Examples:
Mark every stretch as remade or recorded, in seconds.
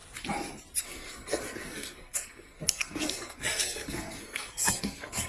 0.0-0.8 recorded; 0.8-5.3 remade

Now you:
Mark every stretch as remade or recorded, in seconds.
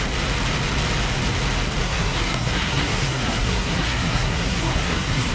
0.0-1.8 recorded; 1.8-5.3 remade